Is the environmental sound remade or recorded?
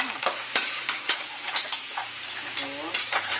remade